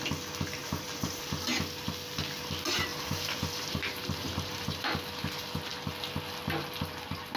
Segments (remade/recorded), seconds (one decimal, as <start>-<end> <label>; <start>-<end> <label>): 0.0-0.6 recorded; 0.6-1.4 remade; 1.4-2.9 recorded; 2.9-4.9 remade; 4.9-7.4 recorded